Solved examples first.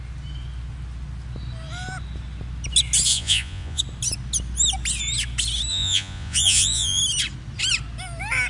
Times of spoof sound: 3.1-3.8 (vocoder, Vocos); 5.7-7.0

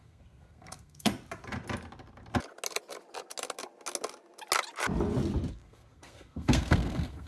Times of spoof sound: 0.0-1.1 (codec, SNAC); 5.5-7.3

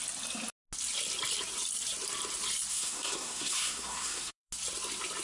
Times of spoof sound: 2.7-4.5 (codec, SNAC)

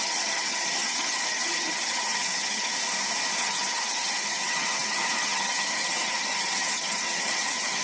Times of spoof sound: 0.0-2.7 (vocoder, HiFi-GAN); 3.3-7.8